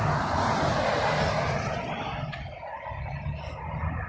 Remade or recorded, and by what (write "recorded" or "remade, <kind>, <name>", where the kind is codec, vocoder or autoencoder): recorded